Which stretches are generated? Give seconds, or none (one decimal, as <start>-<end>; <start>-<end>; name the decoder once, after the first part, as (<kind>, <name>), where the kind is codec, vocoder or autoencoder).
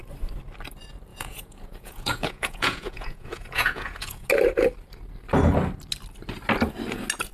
1.1-4.3 (vocoder, Vocos)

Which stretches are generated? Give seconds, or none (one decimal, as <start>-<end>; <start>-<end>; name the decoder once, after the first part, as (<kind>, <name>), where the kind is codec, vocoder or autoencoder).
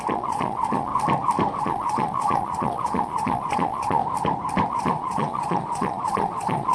0.0-0.9 (vocoder, Vocos); 1.6-4.0; 4.7-6.7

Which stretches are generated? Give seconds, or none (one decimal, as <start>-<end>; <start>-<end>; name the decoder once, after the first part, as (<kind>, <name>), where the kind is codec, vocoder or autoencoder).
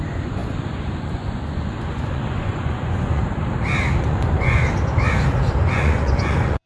0.0-3.2 (vocoder, Vocos); 4.0-4.6; 5.6-6.7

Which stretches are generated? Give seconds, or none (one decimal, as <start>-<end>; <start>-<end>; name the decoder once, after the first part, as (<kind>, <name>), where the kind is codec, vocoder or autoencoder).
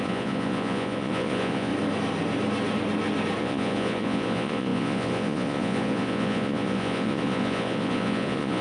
0.0-1.7 (vocoder, Vocos); 3.4-8.6